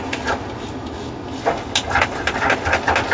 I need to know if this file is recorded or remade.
recorded